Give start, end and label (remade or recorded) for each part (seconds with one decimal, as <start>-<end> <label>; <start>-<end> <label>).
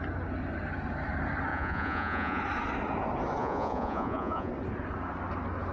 0.0-1.5 recorded; 1.5-2.4 remade; 2.4-3.4 recorded; 3.4-4.5 remade; 4.5-5.7 recorded